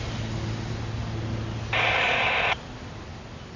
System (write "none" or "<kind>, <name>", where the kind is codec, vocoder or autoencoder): none